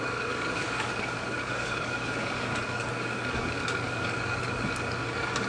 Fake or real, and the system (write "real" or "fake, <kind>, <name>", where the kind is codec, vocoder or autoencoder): fake, codec, DAC